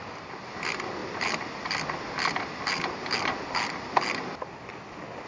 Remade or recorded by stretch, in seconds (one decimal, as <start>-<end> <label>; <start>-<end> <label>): 0.0-5.3 recorded